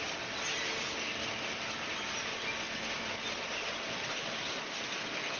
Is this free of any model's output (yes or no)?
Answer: yes